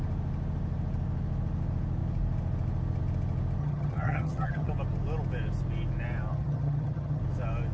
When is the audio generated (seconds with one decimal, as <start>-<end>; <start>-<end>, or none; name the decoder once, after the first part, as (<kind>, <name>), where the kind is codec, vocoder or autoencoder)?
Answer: 3.6-4.7 (vocoder, HiFi-GAN); 6.3-7.2